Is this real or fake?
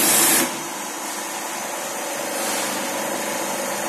real